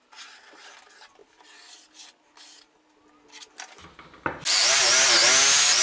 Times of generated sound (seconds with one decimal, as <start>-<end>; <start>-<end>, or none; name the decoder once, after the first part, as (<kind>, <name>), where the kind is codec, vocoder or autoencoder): none